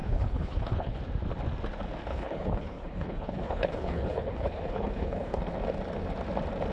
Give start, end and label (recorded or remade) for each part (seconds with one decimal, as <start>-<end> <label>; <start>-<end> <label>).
0.0-1.0 remade; 1.0-2.1 recorded; 2.1-5.4 remade; 5.4-6.7 recorded